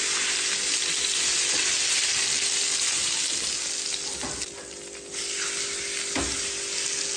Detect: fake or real real